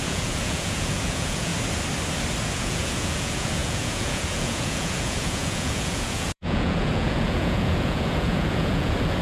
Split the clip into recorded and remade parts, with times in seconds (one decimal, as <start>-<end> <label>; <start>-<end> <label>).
0.0-1.5 remade; 1.5-2.5 recorded; 2.5-9.2 remade